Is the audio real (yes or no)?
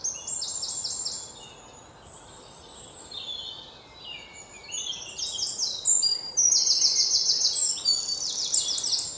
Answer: yes